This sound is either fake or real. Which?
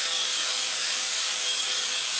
fake